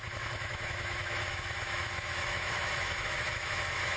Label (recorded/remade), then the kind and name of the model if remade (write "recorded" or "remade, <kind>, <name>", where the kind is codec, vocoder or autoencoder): remade, autoencoder, DAC-VAE